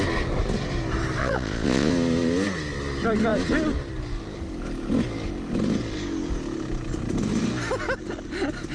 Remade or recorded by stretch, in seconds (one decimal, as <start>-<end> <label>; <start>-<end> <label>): 0.0-1.2 recorded; 1.2-1.9 remade; 1.9-8.7 recorded